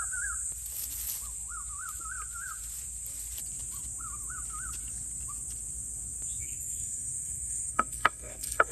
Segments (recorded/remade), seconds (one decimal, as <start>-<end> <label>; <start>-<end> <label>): 0.0-6.4 recorded; 6.4-8.7 remade

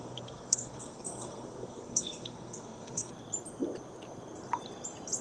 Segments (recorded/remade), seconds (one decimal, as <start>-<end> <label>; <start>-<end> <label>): 0.0-3.1 remade; 3.1-5.2 recorded

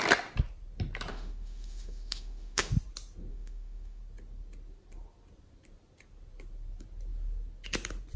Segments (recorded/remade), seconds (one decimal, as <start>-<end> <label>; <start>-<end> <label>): 0.0-1.1 recorded; 1.1-2.7 remade; 2.7-3.3 recorded; 3.3-4.0 remade; 4.0-8.2 recorded

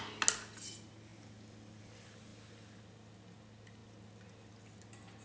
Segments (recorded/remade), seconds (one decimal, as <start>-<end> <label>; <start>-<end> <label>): 0.0-5.2 recorded

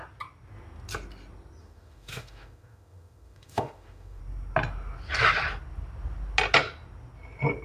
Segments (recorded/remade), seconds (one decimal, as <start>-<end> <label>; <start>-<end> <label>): 0.0-1.6 recorded; 1.6-4.2 remade; 4.2-7.6 recorded

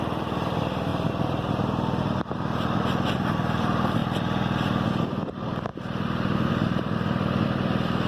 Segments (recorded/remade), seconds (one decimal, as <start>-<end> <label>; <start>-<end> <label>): 0.0-0.9 remade; 0.9-2.0 recorded; 2.0-4.0 remade; 4.0-5.0 recorded; 5.0-8.1 remade

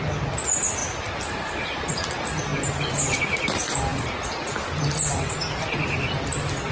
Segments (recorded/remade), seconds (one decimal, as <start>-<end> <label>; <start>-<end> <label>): 0.0-6.7 recorded

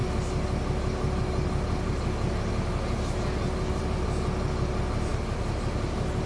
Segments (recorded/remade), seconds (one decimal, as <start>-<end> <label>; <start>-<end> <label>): 0.0-6.3 recorded